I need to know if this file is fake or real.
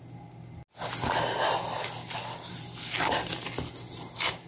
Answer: real